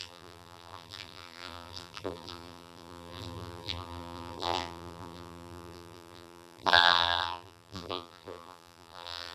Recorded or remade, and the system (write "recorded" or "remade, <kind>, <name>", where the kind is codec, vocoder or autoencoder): remade, vocoder, BigVGAN v2